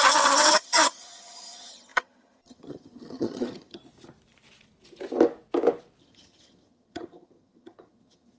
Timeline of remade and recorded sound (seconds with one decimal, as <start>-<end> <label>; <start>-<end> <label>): 0.0-3.8 remade; 3.8-6.0 recorded; 6.0-8.4 remade